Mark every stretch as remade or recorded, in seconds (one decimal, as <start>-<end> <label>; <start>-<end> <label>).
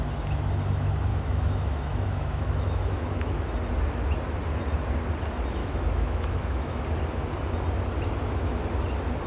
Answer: 0.0-1.1 recorded; 1.1-3.5 remade; 3.5-5.6 recorded; 5.6-6.8 remade; 6.8-9.3 recorded